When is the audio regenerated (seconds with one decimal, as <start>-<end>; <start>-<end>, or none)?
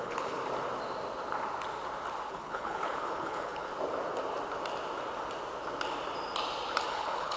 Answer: 0.0-0.4; 2.3-3.7; 6.9-7.4